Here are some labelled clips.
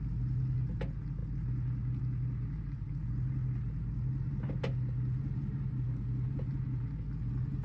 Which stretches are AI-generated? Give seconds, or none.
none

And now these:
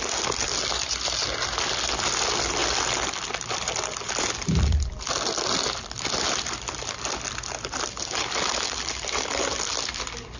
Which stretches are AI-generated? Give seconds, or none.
0.0-2.6 (vocoder, BigVGAN v2); 3.1-10.4

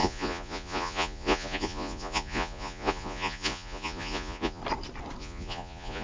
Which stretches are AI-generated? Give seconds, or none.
0.0-4.6 (vocoder, Vocos); 5.2-6.0